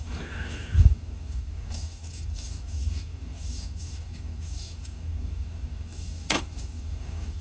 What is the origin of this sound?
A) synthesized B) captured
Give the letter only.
A